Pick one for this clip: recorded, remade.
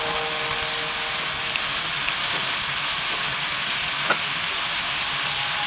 recorded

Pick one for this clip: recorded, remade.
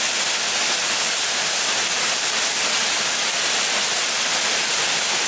recorded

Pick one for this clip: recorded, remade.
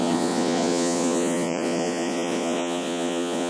remade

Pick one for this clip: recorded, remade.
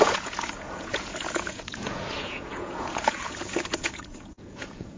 remade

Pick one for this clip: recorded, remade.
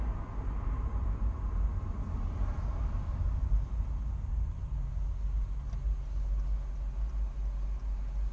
recorded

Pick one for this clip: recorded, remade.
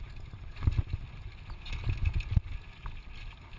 recorded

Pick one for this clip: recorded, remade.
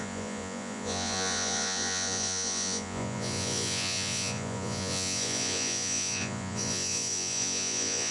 remade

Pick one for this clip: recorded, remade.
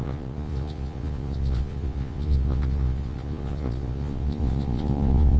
remade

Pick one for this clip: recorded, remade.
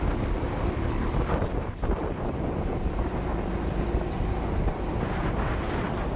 recorded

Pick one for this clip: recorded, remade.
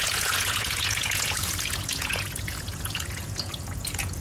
remade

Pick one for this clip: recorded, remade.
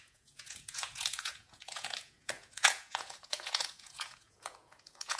remade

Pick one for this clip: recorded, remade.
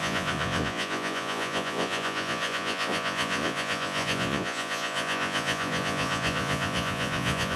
remade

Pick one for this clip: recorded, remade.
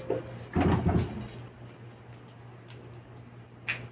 recorded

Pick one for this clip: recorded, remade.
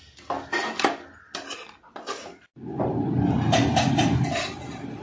recorded